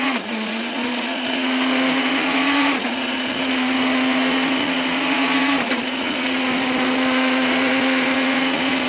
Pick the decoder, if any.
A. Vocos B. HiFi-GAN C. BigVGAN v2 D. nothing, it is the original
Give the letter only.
A